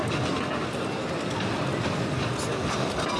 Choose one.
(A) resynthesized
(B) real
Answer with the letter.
B